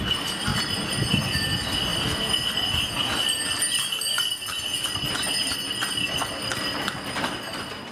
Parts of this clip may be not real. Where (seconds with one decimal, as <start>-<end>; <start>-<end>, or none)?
none